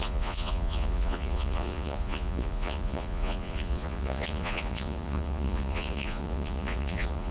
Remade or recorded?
remade